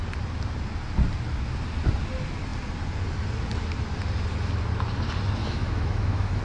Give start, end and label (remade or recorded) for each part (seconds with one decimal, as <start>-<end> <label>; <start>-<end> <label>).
0.0-5.4 recorded; 5.4-6.4 remade

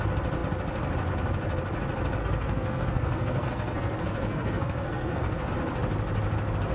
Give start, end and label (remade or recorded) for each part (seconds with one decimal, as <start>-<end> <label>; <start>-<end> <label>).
0.0-2.2 recorded; 2.2-5.5 remade; 5.5-6.7 recorded